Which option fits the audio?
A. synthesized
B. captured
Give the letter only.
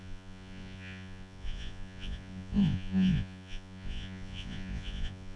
A